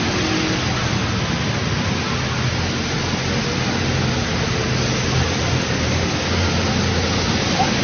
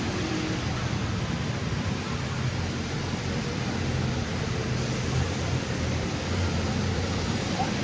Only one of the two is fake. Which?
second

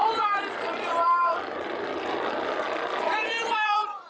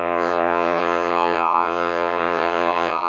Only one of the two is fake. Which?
second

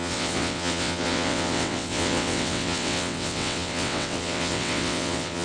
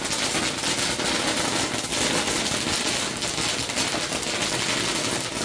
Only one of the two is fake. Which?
first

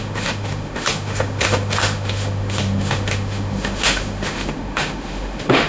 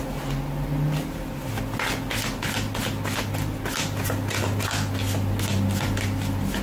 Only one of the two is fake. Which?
first